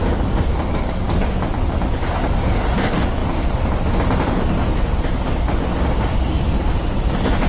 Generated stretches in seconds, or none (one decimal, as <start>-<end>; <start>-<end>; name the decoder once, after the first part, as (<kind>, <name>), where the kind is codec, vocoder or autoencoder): none